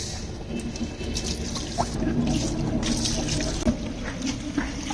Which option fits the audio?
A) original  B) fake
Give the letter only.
A